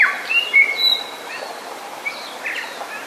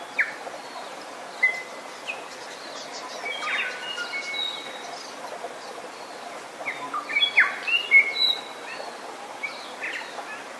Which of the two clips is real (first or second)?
second